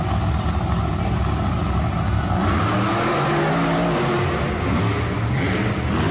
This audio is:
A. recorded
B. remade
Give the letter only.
A